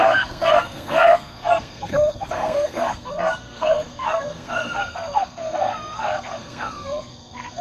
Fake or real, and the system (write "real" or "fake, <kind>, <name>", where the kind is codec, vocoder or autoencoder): fake, codec, SNAC